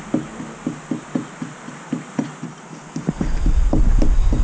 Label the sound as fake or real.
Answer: real